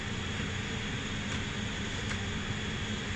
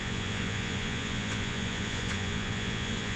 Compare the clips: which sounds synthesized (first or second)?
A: second